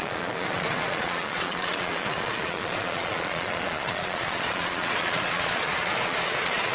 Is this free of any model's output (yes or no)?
no